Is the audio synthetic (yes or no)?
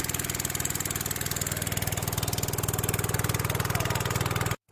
no